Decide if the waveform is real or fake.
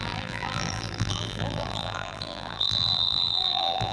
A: fake